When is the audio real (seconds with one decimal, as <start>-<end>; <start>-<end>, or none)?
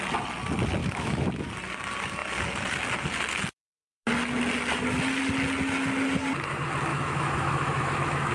0.0-0.8; 1.5-6.9